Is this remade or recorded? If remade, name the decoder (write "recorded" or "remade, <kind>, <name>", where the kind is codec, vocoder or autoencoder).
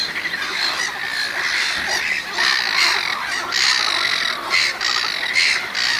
recorded